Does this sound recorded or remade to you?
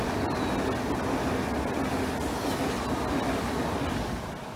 recorded